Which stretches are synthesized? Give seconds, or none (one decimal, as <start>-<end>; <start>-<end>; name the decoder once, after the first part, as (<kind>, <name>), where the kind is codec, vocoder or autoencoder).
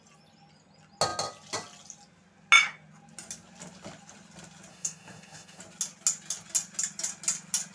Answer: 4.7-5.6 (autoencoder, DAC-VAE)